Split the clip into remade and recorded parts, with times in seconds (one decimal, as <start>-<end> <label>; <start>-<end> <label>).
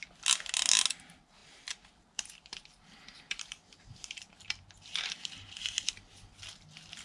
0.0-1.4 recorded; 1.4-5.6 remade; 5.6-7.0 recorded